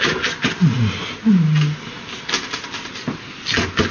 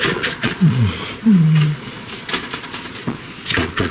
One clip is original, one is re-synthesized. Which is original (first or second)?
first